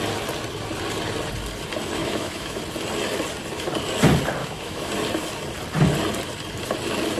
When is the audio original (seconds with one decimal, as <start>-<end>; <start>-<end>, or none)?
0.0-2.0; 2.6-4.4; 4.9-7.2

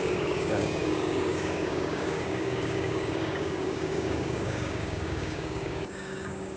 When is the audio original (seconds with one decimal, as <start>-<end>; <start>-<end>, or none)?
none

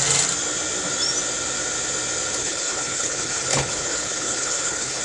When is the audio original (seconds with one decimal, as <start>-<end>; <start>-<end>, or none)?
0.0-2.4

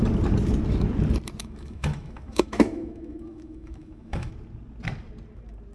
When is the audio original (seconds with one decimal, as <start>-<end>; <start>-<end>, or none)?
0.0-1.4; 4.3-5.7

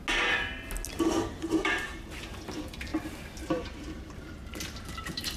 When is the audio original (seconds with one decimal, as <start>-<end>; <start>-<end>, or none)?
0.0-0.9; 2.9-3.4; 4.4-4.9

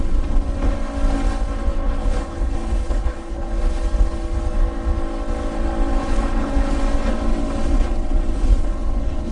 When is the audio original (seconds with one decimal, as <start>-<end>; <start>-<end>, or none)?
0.0-1.7; 3.6-6.0; 6.8-8.5

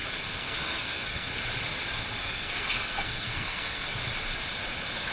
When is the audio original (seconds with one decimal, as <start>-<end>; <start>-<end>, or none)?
1.3-2.2; 4.0-5.1

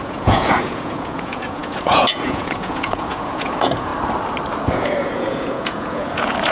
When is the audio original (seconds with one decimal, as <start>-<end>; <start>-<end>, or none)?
3.9-4.7